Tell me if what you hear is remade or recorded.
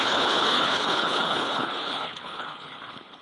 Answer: remade